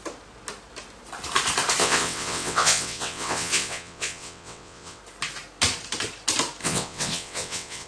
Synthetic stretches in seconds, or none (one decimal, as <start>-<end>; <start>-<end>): 1.8-5.0; 6.6-7.9